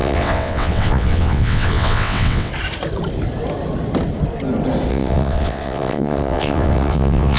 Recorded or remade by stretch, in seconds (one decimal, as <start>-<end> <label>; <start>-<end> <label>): 0.0-2.5 remade; 2.5-4.9 recorded; 4.9-7.4 remade